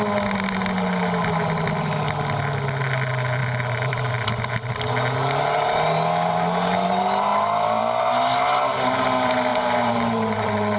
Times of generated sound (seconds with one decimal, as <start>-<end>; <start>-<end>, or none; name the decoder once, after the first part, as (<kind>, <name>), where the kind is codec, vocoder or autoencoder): 9.5-10.8 (vocoder, BigVGAN v2)